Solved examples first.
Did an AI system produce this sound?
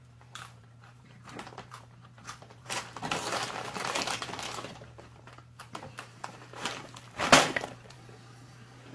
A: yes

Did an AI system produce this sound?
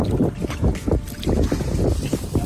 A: no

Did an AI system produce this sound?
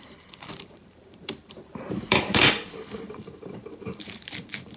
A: yes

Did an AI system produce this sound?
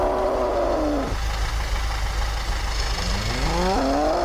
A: no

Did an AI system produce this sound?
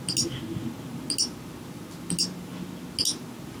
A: no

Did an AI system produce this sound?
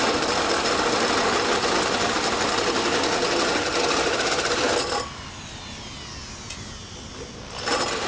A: no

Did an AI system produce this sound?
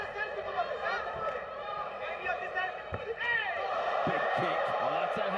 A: yes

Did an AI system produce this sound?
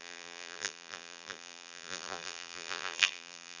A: yes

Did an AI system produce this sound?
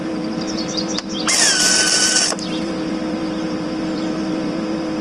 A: yes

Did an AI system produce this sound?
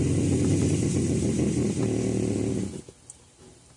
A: yes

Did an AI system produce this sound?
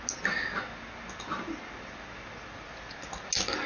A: no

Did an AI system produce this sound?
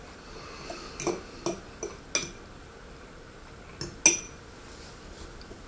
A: no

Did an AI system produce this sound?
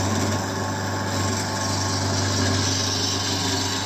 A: no